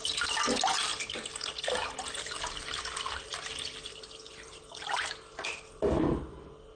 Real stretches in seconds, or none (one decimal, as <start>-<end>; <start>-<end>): 0.0-6.8